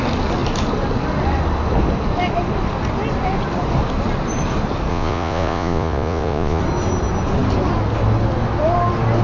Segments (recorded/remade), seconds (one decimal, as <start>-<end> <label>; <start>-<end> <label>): 0.0-4.9 recorded; 4.9-6.6 remade; 6.6-9.2 recorded